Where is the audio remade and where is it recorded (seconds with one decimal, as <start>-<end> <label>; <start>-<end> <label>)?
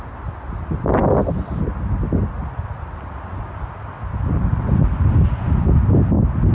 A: 0.0-6.5 recorded